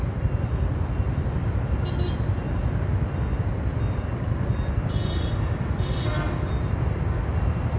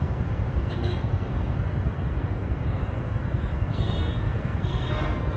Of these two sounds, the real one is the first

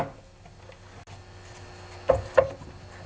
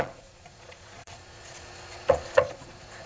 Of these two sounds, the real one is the first